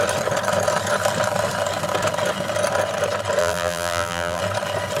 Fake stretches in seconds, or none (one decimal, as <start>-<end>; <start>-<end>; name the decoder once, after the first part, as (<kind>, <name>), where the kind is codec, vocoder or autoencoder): 3.4-4.4 (vocoder, BigVGAN v2)